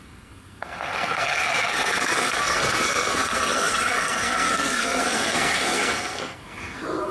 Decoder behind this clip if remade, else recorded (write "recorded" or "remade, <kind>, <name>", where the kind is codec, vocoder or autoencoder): remade, codec, SNAC